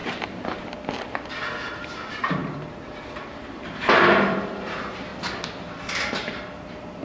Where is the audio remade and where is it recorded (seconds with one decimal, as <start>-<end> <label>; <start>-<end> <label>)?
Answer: 0.0-5.1 remade; 5.1-6.1 recorded; 6.1-7.0 remade